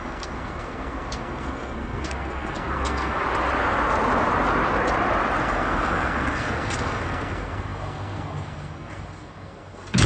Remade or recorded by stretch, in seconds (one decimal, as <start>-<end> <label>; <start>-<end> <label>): 0.0-3.2 remade; 3.2-5.4 recorded; 5.4-10.1 remade

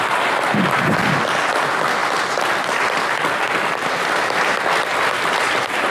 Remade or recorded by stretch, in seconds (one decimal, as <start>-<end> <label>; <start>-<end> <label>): 0.0-5.9 recorded

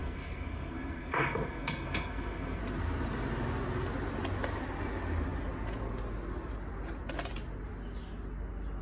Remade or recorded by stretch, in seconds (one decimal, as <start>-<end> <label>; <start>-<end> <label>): 0.0-2.6 remade; 2.6-8.8 recorded

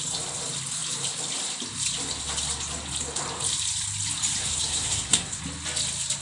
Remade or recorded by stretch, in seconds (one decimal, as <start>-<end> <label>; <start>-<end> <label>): 0.0-4.4 recorded; 4.4-5.4 remade; 5.4-6.2 recorded